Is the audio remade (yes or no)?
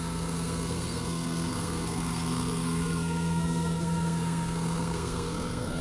yes